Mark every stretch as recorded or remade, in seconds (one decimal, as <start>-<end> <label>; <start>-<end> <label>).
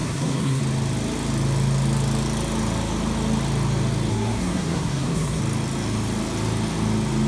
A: 0.0-0.6 remade; 0.6-4.1 recorded; 4.1-5.4 remade; 5.4-7.3 recorded